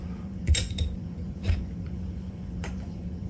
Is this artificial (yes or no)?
yes